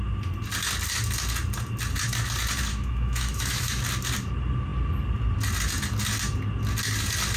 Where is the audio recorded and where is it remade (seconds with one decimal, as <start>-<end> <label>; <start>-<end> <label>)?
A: 0.0-2.7 recorded; 2.7-3.8 remade; 3.8-7.4 recorded